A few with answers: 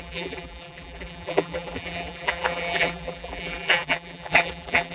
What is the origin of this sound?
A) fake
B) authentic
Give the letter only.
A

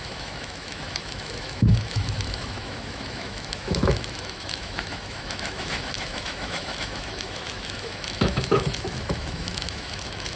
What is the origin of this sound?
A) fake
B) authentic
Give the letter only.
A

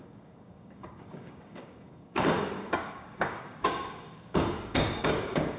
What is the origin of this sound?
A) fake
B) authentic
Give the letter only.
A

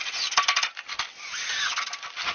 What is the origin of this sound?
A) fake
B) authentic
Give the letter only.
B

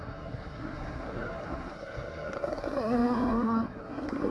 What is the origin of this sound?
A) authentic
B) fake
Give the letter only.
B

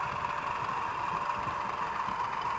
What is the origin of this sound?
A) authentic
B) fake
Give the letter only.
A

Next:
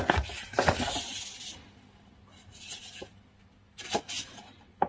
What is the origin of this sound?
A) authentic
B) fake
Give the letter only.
A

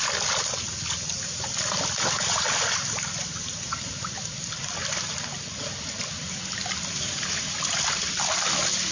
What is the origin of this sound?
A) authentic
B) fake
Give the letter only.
A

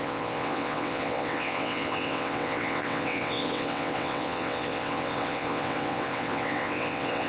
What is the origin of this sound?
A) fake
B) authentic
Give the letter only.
A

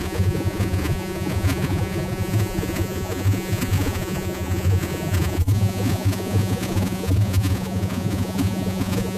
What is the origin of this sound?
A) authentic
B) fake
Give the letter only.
B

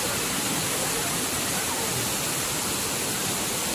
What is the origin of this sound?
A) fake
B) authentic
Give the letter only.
A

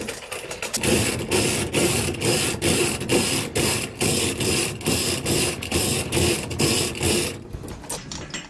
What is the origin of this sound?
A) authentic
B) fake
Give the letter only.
B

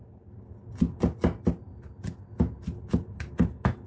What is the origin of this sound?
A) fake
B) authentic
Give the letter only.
B